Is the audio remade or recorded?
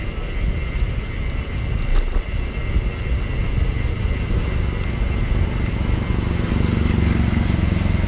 recorded